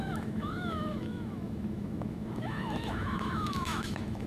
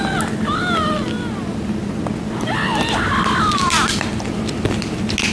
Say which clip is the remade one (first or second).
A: first